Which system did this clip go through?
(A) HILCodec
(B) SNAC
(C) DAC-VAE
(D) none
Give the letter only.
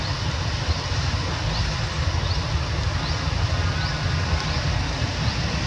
D